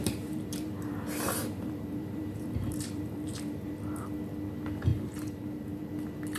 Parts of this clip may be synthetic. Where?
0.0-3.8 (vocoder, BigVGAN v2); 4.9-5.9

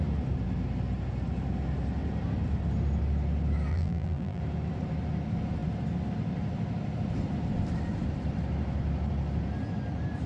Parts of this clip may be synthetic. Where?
3.7-4.4 (vocoder, BigVGAN v2)

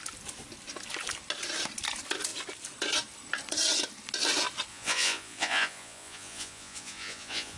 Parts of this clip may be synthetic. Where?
4.7-7.6 (vocoder, Vocos)

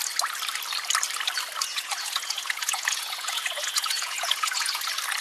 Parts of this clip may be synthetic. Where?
1.7-4.8 (vocoder, Vocos)

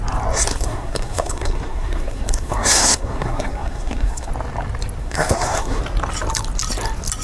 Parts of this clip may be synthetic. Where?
0.5-4.3 (codec, SNAC); 5.0-5.8

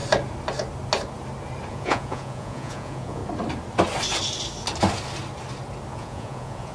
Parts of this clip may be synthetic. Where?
1.7-3.2 (vocoder, Vocos); 5.9-6.7

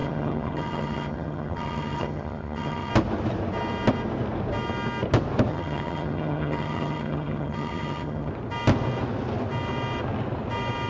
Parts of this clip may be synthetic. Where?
0.0-2.9 (vocoder, HiFi-GAN); 5.5-8.3

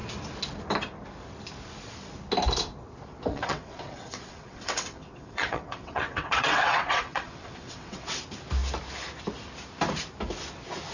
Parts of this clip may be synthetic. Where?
3.3-8.2 (vocoder, WaveNeXt)